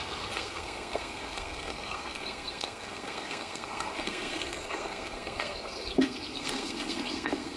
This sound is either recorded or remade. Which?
remade